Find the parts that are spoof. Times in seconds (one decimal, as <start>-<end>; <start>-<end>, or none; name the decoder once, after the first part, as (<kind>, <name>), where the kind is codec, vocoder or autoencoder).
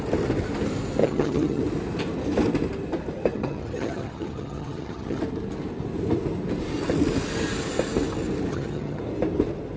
1.0-1.6 (vocoder, HiFi-GAN); 3.3-5.2; 8.5-9.0